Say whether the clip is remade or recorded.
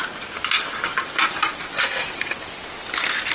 recorded